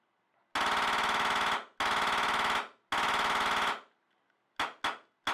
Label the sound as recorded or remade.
recorded